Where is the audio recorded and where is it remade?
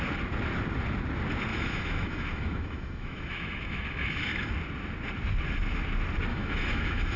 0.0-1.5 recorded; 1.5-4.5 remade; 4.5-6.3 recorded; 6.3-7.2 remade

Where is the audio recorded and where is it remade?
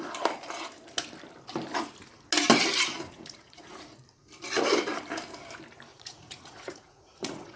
0.0-3.1 recorded; 3.1-4.0 remade; 4.0-5.9 recorded; 5.9-7.6 remade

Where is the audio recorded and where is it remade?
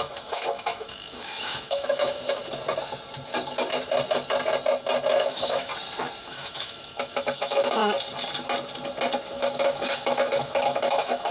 0.0-2.4 remade; 2.4-5.1 recorded; 5.1-5.7 remade; 5.7-6.2 recorded; 6.2-7.8 remade; 7.8-9.3 recorded; 9.3-11.3 remade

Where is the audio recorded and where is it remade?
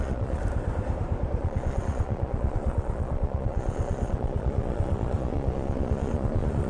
0.0-0.4 remade; 0.4-1.4 recorded; 1.4-6.7 remade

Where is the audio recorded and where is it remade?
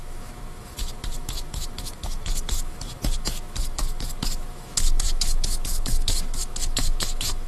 0.0-7.5 remade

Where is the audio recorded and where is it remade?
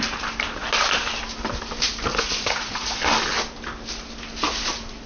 0.0-2.1 recorded; 2.1-3.0 remade; 3.0-5.1 recorded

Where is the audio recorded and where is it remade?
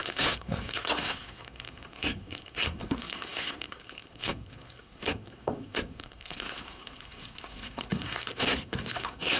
0.0-9.4 remade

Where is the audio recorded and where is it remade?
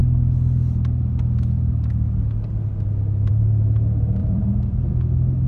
0.0-4.2 recorded; 4.2-4.9 remade; 4.9-5.5 recorded